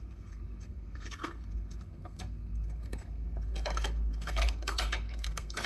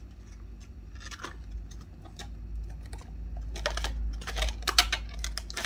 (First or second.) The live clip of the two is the second